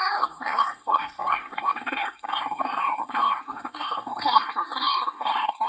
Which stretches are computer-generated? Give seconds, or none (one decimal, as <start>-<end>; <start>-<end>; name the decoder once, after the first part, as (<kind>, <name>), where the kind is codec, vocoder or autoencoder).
0.0-5.7 (codec, SNAC)